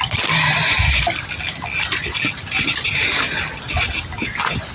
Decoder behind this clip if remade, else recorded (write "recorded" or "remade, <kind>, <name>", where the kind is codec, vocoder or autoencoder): recorded